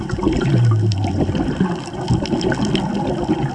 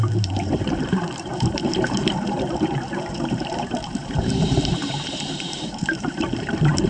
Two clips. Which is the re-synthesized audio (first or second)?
second